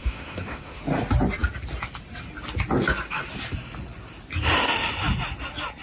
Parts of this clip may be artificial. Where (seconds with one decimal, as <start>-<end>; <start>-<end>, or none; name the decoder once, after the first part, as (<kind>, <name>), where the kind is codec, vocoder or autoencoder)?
0.0-0.8 (autoencoder, DAC-VAE)